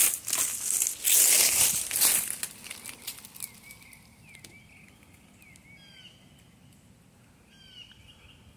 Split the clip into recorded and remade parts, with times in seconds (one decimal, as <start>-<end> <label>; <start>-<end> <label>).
0.0-8.6 recorded